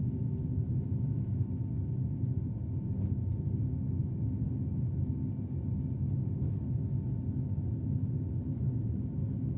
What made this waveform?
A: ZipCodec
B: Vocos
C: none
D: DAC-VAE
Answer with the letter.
C